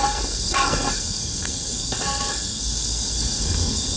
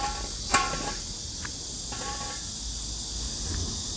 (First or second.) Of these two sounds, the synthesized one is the first